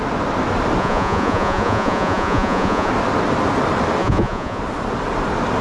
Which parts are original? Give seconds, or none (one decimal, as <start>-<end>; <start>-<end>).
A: 0.0-0.8; 2.9-4.0; 4.6-5.6